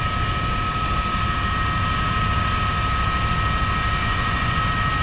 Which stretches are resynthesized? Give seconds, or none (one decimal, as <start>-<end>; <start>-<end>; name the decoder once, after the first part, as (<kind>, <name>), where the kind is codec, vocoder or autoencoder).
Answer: 4.0-4.6 (vocoder, Vocos)